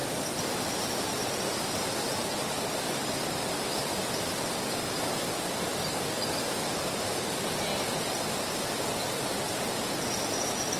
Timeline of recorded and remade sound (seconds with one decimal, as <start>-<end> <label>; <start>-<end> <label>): 0.0-10.8 recorded